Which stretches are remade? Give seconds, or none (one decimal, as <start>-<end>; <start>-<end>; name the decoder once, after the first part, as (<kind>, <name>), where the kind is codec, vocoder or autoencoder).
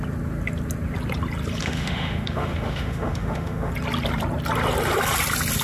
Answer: 1.6-3.7 (autoencoder, DAC-VAE)